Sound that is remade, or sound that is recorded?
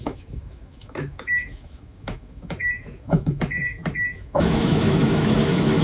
remade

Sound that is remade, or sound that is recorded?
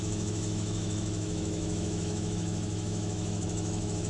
remade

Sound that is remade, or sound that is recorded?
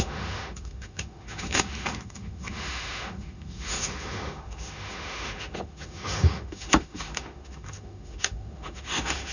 remade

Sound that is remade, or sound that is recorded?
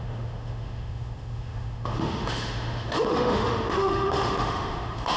remade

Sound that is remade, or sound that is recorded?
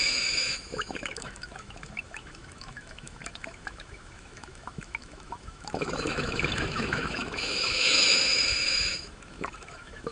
remade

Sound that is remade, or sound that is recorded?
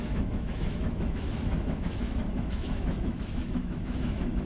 remade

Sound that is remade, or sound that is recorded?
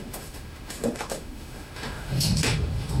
remade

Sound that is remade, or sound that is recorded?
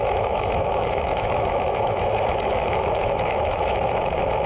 remade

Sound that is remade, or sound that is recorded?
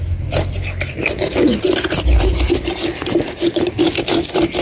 recorded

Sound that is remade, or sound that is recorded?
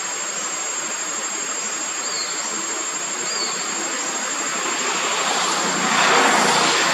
recorded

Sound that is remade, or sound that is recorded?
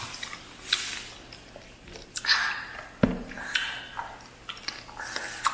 recorded